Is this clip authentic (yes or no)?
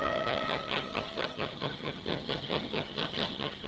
no